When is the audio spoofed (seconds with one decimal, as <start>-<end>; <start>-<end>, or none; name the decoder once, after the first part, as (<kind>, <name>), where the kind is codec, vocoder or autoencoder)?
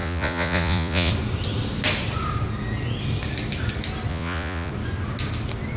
0.0-1.1 (vocoder, Vocos); 4.1-4.7